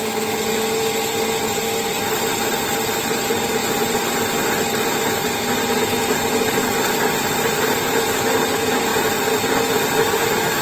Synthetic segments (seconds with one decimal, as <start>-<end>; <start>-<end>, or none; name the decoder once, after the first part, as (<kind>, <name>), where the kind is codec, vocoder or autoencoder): none